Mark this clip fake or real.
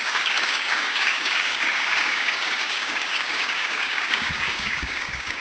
fake